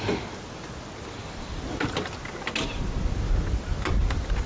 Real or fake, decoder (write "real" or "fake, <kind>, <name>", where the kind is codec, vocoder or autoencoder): real